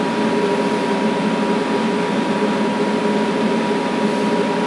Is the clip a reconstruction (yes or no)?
no